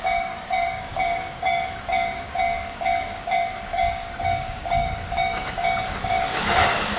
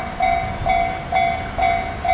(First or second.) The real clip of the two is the second